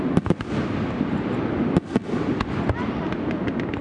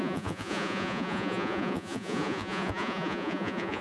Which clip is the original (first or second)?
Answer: first